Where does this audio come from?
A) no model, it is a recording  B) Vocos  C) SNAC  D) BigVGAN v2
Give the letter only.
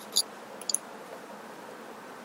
A